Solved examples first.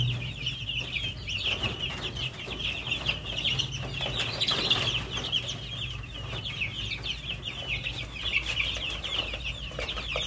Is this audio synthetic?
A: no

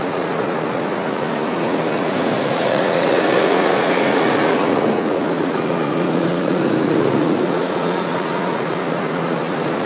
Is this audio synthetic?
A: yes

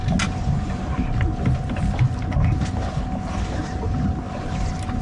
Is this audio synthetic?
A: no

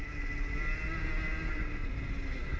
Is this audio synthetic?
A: no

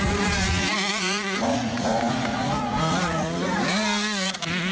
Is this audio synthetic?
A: yes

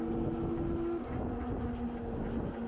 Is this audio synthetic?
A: no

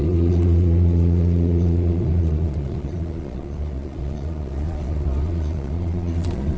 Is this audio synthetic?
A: yes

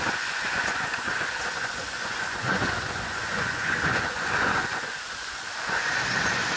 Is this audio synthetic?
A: yes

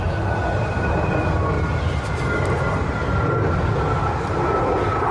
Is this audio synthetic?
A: no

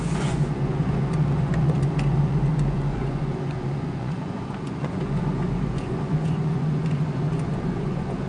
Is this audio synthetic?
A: yes